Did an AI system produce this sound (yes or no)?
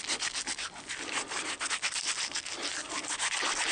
no